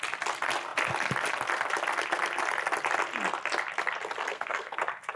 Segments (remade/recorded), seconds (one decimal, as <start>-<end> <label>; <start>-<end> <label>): 0.0-4.2 recorded; 4.2-4.8 remade; 4.8-5.2 recorded